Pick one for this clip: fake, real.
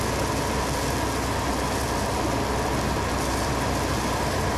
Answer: real